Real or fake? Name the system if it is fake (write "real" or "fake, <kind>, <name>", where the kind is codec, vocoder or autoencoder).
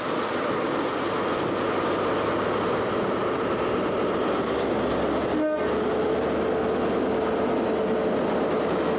real